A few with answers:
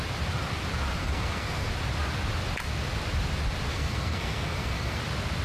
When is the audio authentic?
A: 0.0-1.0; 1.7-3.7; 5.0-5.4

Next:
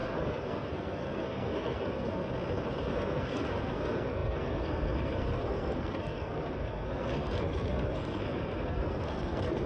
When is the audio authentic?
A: 2.2-2.8

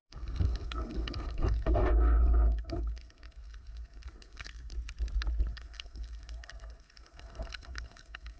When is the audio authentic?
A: 4.7-5.5

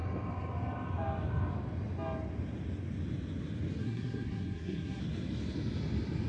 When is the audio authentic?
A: 0.0-3.8; 5.0-6.3

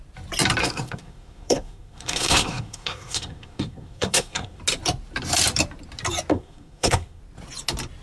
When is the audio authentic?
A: 0.0-0.6; 4.6-6.3; 7.2-8.0

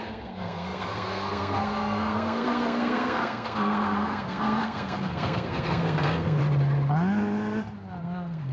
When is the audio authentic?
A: 6.4-8.0